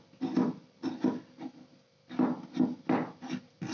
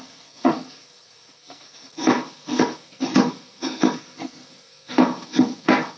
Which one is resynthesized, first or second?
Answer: second